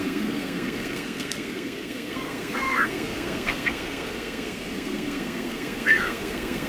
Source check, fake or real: fake